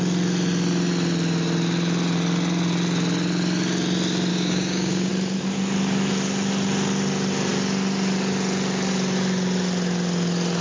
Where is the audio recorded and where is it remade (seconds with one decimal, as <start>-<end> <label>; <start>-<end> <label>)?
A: 0.0-4.3 recorded; 4.3-5.1 remade; 5.1-10.6 recorded